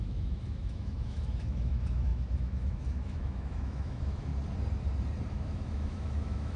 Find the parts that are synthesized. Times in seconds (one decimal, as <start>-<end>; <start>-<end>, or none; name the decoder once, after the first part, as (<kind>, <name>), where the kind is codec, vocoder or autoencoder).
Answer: 0.0-4.3 (autoencoder, DAC-VAE); 5.3-6.6